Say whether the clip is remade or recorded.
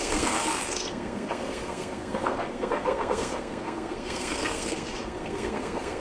remade